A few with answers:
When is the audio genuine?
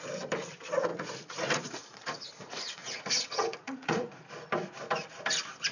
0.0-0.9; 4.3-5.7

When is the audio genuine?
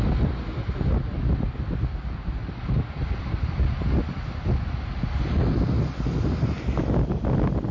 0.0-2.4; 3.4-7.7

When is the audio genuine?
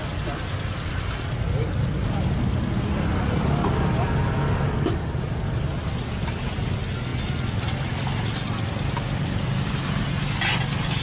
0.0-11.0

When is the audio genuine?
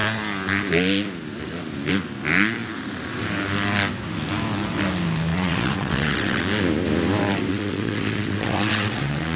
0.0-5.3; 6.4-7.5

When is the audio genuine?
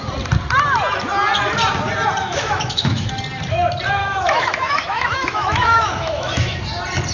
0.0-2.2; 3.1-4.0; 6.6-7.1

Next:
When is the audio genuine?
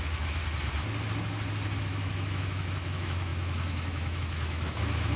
0.4-1.8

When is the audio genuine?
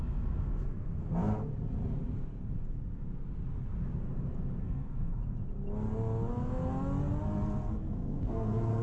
1.4-4.6; 5.2-7.9